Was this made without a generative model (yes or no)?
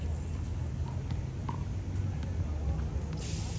yes